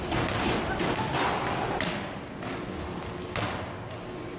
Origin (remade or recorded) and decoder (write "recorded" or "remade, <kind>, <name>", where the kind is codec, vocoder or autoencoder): recorded